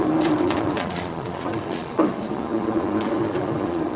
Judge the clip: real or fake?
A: fake